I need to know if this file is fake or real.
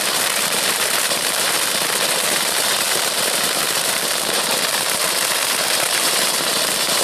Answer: fake